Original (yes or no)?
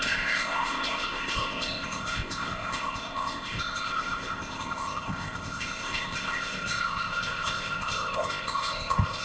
no